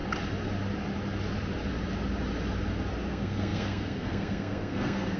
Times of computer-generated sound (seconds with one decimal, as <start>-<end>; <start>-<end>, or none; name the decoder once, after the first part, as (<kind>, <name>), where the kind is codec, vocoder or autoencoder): 3.1-5.2 (codec, SNAC)